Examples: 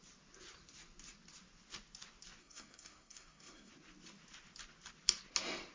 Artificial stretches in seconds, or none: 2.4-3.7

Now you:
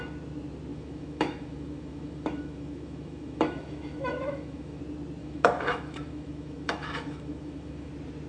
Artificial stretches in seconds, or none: 0.7-4.8; 5.2-7.9

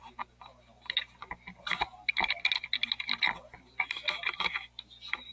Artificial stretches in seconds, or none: none

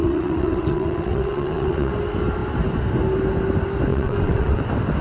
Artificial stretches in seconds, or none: 0.0-1.9; 3.9-4.6